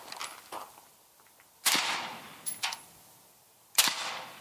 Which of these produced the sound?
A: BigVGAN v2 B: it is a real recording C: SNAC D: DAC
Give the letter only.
B